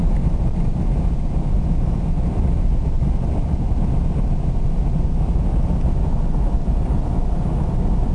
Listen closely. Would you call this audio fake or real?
real